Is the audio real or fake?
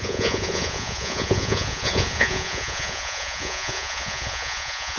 fake